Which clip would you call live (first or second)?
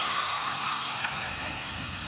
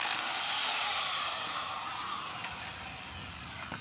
second